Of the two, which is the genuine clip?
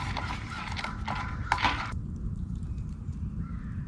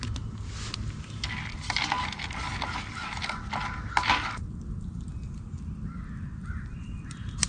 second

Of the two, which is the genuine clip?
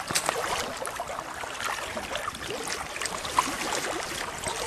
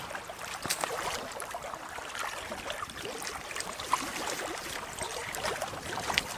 first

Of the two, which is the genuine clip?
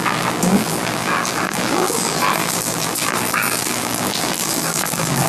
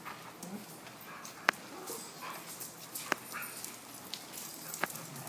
second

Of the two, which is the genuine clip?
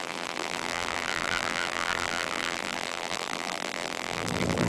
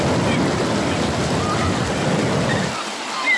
second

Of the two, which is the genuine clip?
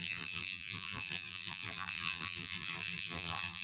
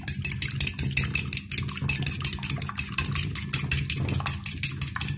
second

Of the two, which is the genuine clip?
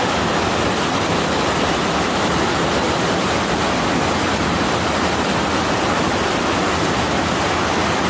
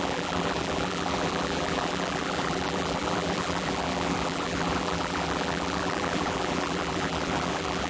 first